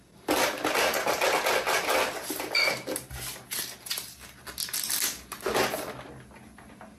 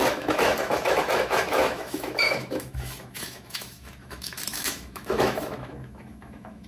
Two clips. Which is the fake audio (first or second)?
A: second